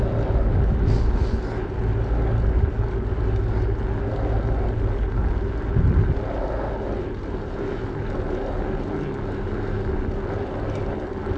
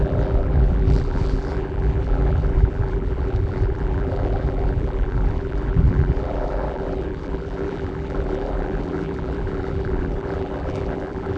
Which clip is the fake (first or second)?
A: second